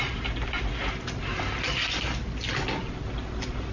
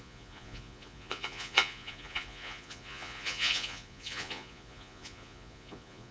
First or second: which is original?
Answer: first